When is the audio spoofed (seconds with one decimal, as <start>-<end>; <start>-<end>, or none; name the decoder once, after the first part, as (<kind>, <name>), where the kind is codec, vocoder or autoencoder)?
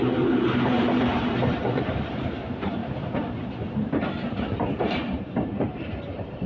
0.0-2.8 (vocoder, BigVGAN v2); 4.8-6.5